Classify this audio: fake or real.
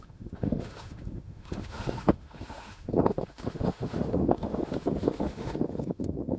fake